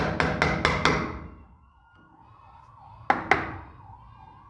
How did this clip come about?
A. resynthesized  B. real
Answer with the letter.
B